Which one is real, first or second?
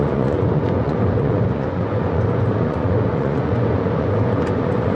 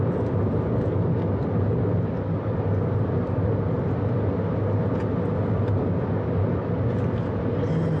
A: second